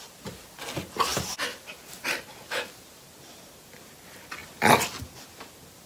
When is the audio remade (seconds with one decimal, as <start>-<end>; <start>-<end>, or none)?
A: 1.1-2.5